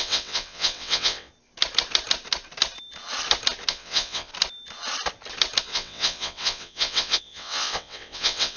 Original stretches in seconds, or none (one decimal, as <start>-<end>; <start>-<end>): 1.3-3.7; 4.3-5.6